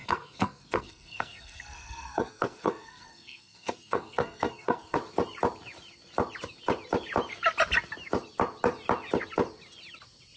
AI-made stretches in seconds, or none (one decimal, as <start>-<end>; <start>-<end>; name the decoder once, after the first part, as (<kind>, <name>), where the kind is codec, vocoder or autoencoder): 0.0-5.0 (codec, SNAC)